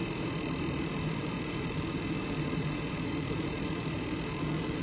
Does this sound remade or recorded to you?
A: remade